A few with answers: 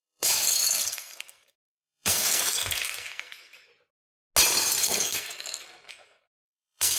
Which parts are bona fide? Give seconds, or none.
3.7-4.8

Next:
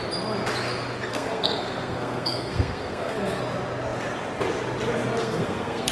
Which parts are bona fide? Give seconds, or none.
0.0-1.1; 3.4-5.2

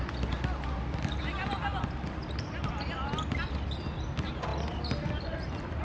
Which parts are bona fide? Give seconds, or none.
0.0-5.8

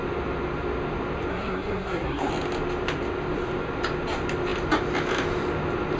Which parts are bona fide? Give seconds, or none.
0.0-1.3; 2.3-6.0

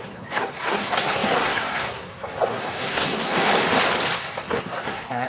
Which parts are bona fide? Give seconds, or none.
3.5-4.2

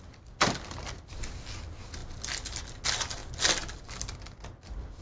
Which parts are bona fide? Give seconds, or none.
0.0-5.0